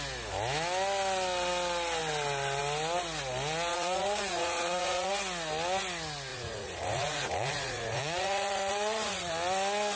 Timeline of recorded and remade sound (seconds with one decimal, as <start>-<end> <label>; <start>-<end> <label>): 0.0-3.7 recorded; 3.7-5.1 remade; 5.1-6.3 recorded; 6.3-9.3 remade; 9.3-10.0 recorded